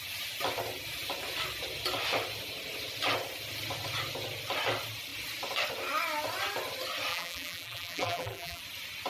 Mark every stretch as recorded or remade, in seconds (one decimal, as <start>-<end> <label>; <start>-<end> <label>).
0.0-7.1 recorded; 7.1-8.6 remade; 8.6-9.1 recorded

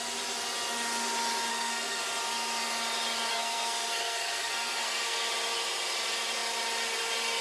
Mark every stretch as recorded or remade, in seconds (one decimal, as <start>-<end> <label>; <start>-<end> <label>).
0.0-1.5 recorded; 1.5-2.0 remade; 2.0-3.3 recorded; 3.3-5.3 remade; 5.3-7.4 recorded

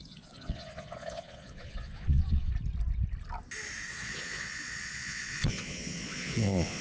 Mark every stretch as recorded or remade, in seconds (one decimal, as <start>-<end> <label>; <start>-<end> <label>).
0.0-2.5 remade; 2.5-3.9 recorded; 3.9-6.8 remade